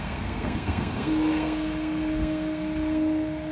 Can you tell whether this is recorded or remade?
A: remade